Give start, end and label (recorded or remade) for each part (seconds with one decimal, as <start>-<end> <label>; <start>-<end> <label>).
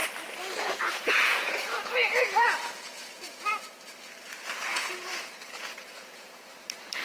0.0-0.6 recorded; 0.6-3.6 remade; 3.6-4.7 recorded; 4.7-6.5 remade; 6.5-7.0 recorded